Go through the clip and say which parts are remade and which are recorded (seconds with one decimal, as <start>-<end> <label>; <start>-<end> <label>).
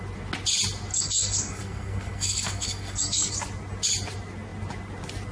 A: 0.0-0.9 recorded; 0.9-3.3 remade; 3.3-5.3 recorded